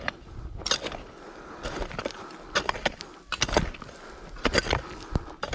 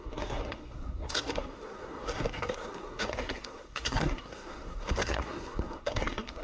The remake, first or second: second